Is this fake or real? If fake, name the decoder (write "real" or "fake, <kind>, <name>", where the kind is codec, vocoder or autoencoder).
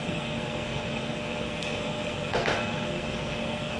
fake, codec, SNAC